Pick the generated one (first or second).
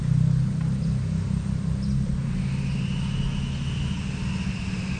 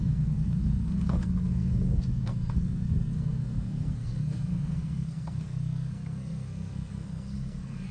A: second